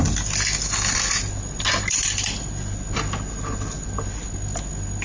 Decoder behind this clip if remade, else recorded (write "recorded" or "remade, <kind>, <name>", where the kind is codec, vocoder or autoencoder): recorded